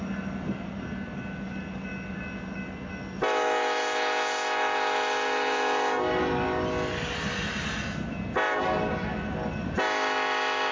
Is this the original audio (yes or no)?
yes